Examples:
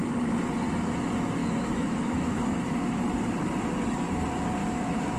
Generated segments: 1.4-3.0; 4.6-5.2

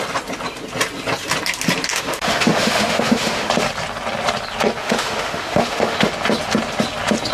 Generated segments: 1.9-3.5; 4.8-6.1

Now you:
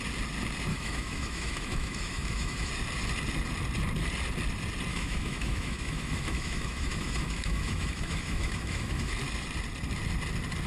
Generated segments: 0.7-2.7; 4.9-9.1

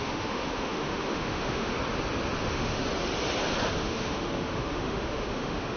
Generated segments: 0.0-1.7; 2.4-2.8; 3.8-5.8